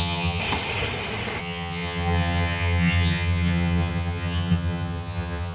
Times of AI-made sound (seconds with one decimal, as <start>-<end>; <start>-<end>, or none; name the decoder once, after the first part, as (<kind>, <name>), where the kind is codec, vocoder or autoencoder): 0.0-0.4 (vocoder, HiFi-GAN); 1.4-5.5